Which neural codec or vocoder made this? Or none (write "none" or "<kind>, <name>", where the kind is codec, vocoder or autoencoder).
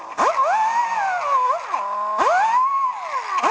none